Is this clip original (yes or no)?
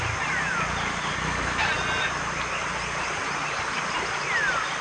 yes